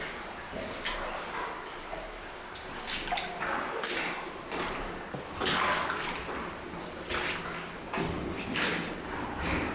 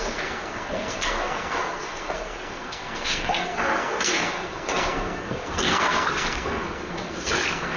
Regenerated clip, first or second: second